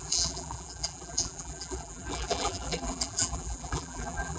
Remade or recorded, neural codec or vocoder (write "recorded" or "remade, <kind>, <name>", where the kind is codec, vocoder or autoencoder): remade, vocoder, BigVGAN v2